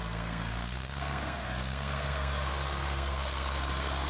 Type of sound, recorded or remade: remade